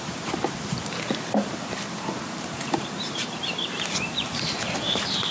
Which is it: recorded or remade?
remade